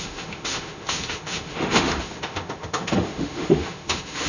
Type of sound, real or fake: fake